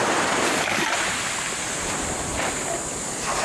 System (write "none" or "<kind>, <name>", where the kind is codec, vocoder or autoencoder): none